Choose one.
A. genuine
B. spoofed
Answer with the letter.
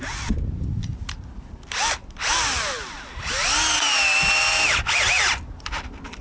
A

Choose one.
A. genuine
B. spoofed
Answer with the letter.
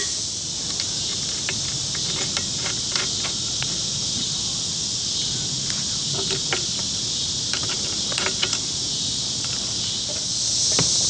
A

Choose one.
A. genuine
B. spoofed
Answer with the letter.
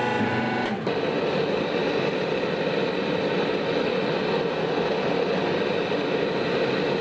A